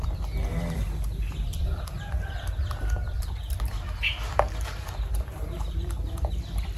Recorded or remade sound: recorded